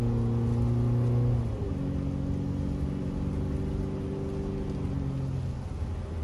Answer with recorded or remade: recorded